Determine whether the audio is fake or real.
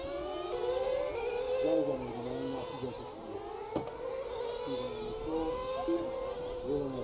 real